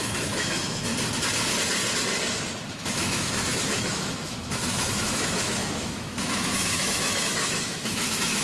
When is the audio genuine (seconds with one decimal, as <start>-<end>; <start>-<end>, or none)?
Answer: 0.9-2.7